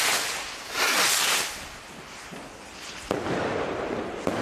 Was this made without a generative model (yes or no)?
yes